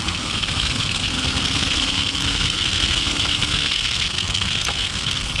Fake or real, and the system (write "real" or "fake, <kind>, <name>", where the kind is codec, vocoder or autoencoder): fake, codec, SNAC